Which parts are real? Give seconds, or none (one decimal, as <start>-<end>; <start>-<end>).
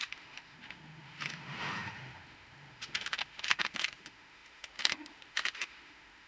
none